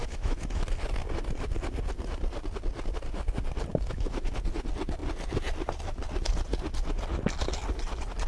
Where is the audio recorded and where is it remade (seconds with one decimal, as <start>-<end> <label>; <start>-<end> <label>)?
0.0-0.6 remade; 0.6-3.7 recorded; 3.7-4.3 remade; 4.3-8.3 recorded